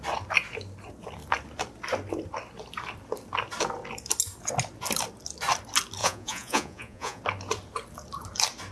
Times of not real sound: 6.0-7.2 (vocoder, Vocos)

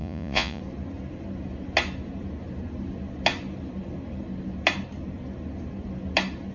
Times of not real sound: 0.0-0.6 (vocoder, Vocos)

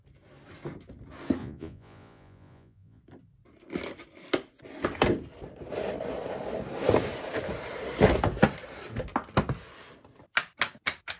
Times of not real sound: 1.4-3.0 (vocoder, Vocos)

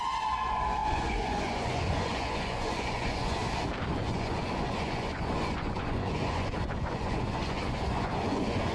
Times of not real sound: 0.0-3.4 (vocoder, Vocos); 3.9-8.7